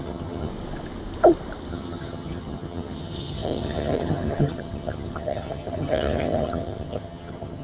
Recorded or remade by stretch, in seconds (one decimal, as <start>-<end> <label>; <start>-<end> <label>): 0.0-0.5 remade; 0.5-1.7 recorded; 1.7-7.6 remade